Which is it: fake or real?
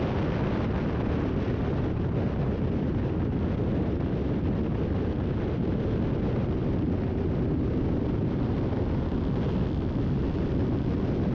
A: real